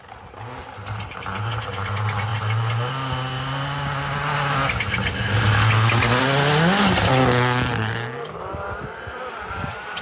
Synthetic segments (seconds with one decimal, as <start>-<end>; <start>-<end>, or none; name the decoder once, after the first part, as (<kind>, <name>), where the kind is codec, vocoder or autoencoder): none